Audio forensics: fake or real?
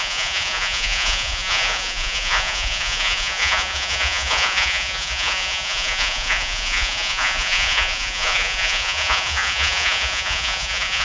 fake